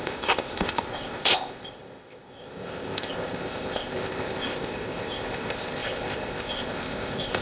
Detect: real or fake fake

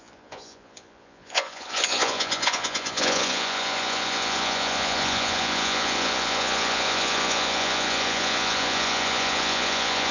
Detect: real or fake fake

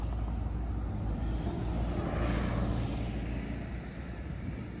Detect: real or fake real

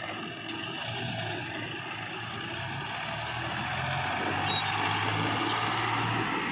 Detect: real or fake real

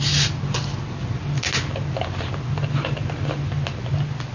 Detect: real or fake real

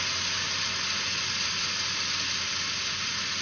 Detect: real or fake real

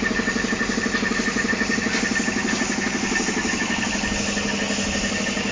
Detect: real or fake real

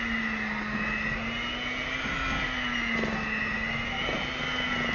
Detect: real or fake real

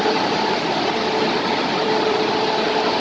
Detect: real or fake fake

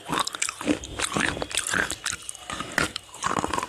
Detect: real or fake real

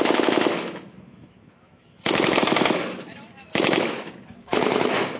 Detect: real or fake fake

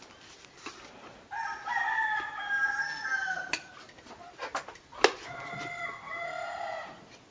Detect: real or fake real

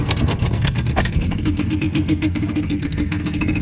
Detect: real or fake fake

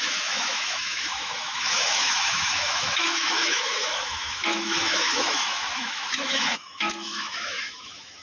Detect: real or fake fake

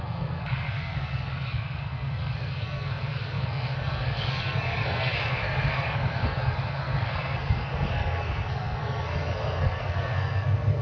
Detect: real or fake fake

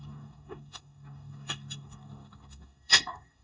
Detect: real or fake fake